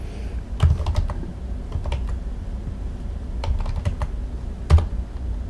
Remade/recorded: recorded